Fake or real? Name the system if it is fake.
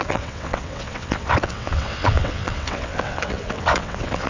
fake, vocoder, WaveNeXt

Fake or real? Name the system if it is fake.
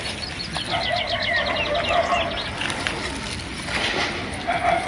real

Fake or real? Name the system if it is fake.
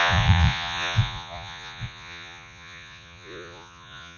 fake, vocoder, Vocos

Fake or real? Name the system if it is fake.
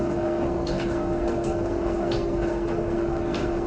fake, codec, SNAC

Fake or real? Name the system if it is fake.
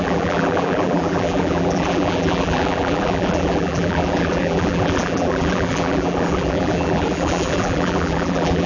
fake, vocoder, BigVGAN v2